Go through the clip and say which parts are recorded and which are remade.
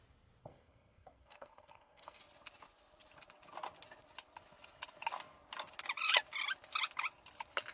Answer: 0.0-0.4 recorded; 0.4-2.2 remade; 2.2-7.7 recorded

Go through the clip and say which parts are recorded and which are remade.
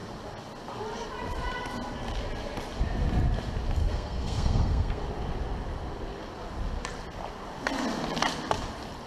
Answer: 0.0-3.8 recorded; 3.8-5.0 remade; 5.0-9.1 recorded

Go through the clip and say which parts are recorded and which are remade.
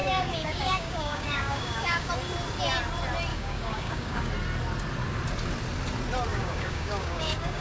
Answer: 0.0-2.1 remade; 2.1-3.3 recorded; 3.3-4.3 remade; 4.3-6.3 recorded; 6.3-7.6 remade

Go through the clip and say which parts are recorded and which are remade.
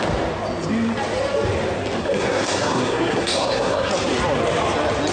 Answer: 0.0-2.0 recorded; 2.0-3.9 remade; 3.9-5.1 recorded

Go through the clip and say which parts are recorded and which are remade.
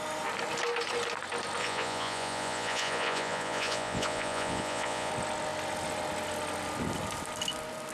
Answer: 0.0-1.6 recorded; 1.6-5.1 remade; 5.1-7.9 recorded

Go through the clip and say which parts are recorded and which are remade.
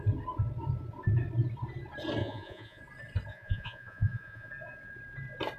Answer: 0.0-2.2 recorded; 2.2-2.8 remade; 2.8-3.3 recorded; 3.3-4.5 remade; 4.5-5.6 recorded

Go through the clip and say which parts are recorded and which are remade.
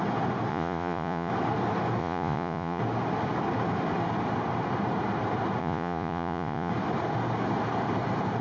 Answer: 0.0-0.5 recorded; 0.5-1.3 remade; 1.3-2.0 recorded; 2.0-2.8 remade; 2.8-5.6 recorded; 5.6-6.7 remade; 6.7-8.4 recorded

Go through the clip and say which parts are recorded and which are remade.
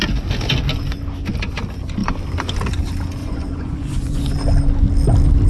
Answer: 0.0-3.2 recorded; 3.2-4.3 remade; 4.3-5.5 recorded